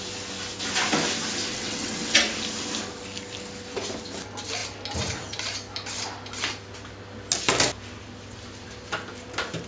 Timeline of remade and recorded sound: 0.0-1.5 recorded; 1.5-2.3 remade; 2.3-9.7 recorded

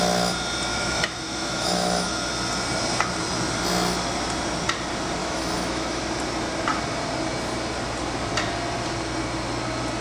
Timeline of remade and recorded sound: 0.0-0.7 recorded; 0.7-2.3 remade; 2.3-5.2 recorded; 5.2-6.0 remade; 6.0-10.0 recorded